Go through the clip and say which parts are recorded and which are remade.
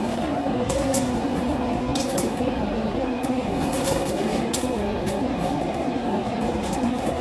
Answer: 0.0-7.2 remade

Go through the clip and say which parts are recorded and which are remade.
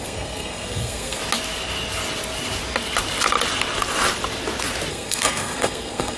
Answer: 0.0-1.2 remade; 1.2-4.9 recorded; 4.9-6.2 remade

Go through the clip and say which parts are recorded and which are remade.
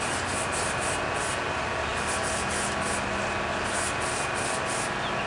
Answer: 0.0-5.3 recorded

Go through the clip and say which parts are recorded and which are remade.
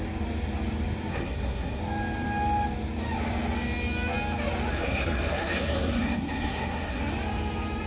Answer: 0.0-1.1 recorded; 1.1-1.8 remade; 1.8-4.7 recorded; 4.7-7.0 remade; 7.0-7.9 recorded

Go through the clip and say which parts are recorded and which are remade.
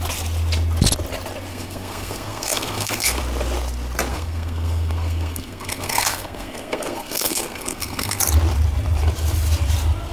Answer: 0.0-1.5 recorded; 1.5-3.2 remade; 3.2-4.1 recorded; 4.1-8.2 remade; 8.2-10.1 recorded